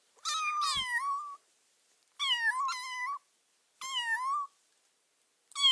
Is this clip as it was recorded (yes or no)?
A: yes